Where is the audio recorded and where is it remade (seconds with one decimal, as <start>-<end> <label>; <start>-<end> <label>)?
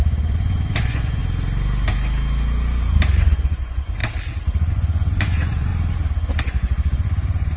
0.0-1.2 remade; 1.2-3.2 recorded; 3.2-4.0 remade; 4.0-4.7 recorded; 4.7-5.7 remade; 5.7-6.4 recorded; 6.4-7.6 remade